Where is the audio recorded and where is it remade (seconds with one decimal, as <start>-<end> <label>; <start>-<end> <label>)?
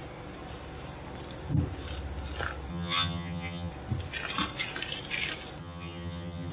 0.0-2.7 recorded; 2.7-3.7 remade; 3.7-5.6 recorded; 5.6-6.5 remade